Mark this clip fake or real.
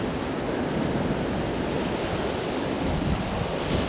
real